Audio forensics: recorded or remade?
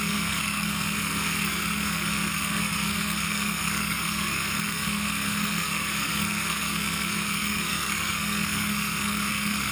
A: remade